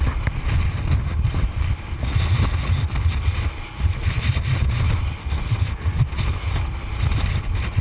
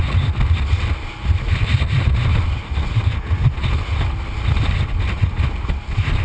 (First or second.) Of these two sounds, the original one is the second